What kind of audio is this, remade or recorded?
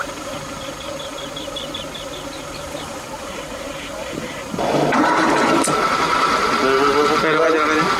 recorded